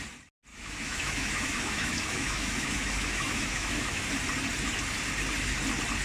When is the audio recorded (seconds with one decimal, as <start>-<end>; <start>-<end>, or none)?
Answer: 0.0-0.5; 4.1-6.0